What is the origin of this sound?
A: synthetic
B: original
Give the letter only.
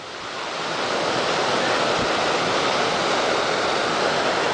B